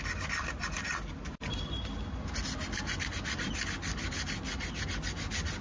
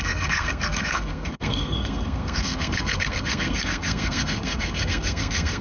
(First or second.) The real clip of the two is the first